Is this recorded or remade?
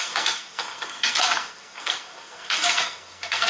remade